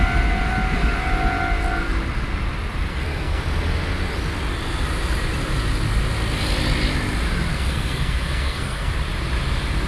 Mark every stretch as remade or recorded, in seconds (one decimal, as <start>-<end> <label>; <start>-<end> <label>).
0.0-2.9 recorded; 2.9-3.4 remade; 3.4-7.5 recorded; 7.5-8.9 remade; 8.9-9.9 recorded